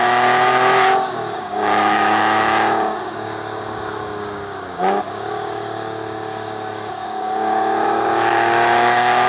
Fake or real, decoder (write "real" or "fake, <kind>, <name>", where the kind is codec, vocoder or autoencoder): fake, codec, DAC